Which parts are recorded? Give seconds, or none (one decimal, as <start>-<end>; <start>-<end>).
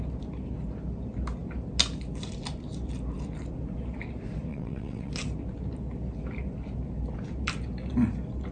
0.0-4.5; 5.1-8.5